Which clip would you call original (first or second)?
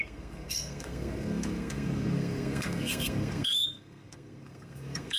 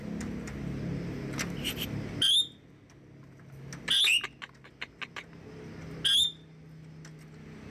second